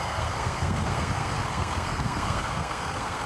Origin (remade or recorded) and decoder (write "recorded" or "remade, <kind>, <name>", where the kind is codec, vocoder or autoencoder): remade, codec, SNAC